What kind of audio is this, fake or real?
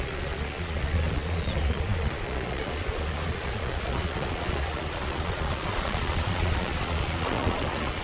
fake